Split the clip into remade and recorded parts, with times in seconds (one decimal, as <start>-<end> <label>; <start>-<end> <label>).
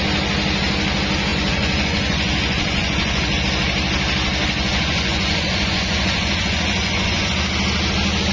0.0-1.3 recorded; 1.3-3.4 remade; 3.4-4.4 recorded; 4.4-7.3 remade; 7.3-8.3 recorded